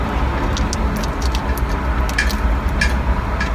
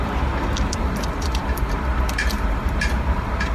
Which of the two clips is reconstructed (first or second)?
second